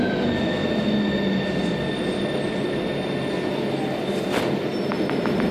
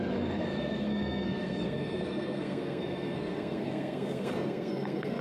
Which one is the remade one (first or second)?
second